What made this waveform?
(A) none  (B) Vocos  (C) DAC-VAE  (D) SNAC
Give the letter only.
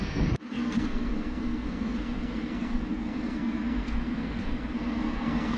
D